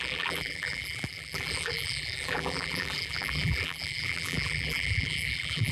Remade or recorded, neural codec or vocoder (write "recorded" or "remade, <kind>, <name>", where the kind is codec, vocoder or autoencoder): remade, vocoder, BigVGAN v2